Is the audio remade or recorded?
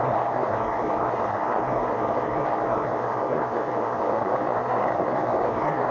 remade